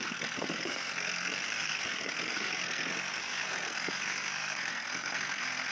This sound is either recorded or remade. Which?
remade